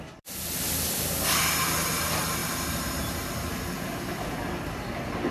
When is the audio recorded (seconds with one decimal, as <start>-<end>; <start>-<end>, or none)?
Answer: 0.0-5.3